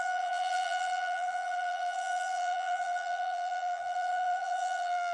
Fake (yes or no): yes